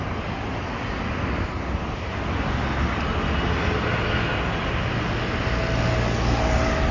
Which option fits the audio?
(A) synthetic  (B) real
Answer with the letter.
B